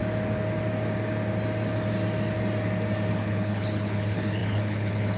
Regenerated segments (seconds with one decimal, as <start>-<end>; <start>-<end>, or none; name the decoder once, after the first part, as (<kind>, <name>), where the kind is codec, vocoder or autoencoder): 3.1-5.2 (codec, HILCodec)